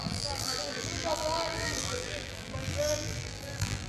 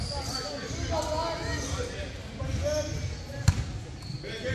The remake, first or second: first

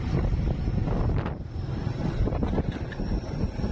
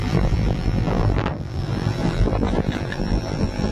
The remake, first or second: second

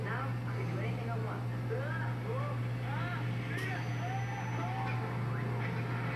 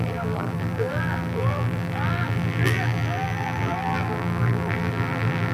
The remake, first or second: second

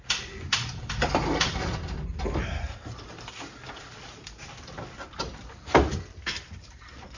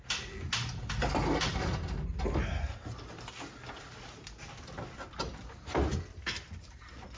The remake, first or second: first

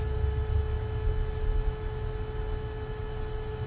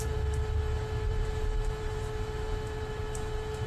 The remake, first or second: second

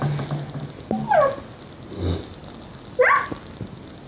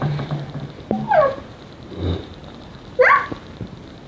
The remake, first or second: second